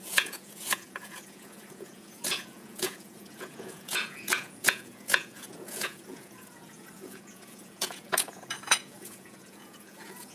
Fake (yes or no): yes